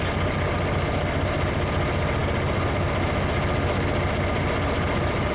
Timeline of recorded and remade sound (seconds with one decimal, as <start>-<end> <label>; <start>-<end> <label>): 0.0-5.3 recorded